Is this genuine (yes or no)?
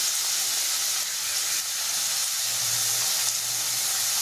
yes